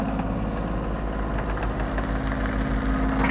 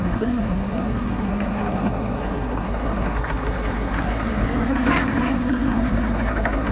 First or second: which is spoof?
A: second